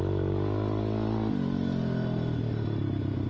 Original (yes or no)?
yes